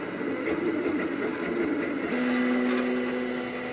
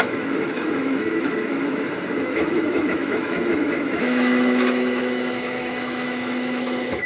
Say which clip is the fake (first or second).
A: second